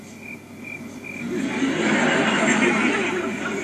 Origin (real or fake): real